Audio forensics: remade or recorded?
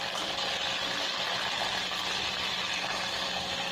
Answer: recorded